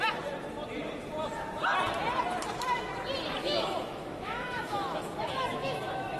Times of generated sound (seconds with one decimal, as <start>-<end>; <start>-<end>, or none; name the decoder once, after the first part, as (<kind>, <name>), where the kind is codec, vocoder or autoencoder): 3.4-6.2 (autoencoder, DAC-VAE)